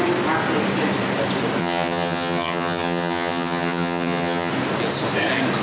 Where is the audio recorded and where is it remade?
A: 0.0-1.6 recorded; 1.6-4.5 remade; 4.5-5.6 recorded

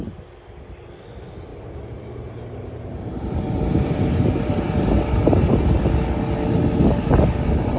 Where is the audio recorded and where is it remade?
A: 0.0-1.5 recorded; 1.5-5.7 remade; 5.7-7.8 recorded

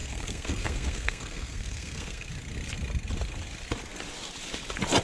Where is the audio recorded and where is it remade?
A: 0.0-2.3 remade; 2.3-5.0 recorded

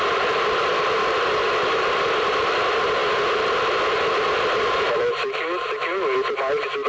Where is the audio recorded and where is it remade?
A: 0.0-6.9 recorded

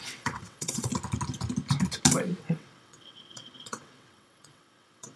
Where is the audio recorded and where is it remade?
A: 0.0-0.9 remade; 0.9-2.4 recorded; 2.4-5.2 remade

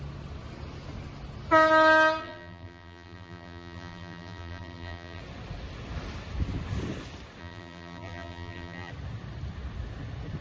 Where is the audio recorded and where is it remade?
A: 0.0-2.2 recorded; 2.2-5.2 remade; 5.2-7.4 recorded; 7.4-8.9 remade; 8.9-10.4 recorded